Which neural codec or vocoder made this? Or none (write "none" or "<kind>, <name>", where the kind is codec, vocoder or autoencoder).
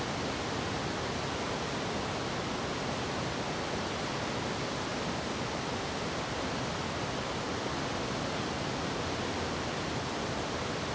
none